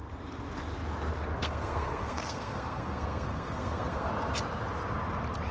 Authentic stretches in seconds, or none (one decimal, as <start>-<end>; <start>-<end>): 0.0-1.4; 4.1-5.5